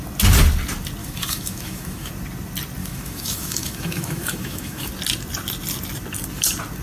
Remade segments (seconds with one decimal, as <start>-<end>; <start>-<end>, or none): 1.0-2.1; 2.8-4.9